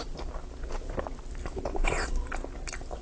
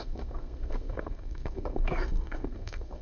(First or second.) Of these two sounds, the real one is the first